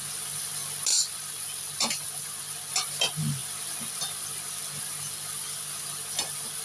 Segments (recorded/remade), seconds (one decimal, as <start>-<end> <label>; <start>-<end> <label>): 0.0-6.6 recorded